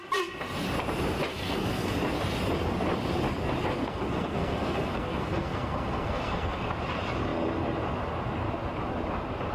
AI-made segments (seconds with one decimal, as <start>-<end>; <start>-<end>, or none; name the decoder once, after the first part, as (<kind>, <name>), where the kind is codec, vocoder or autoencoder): 1.3-1.9 (codec, SNAC); 3.8-6.7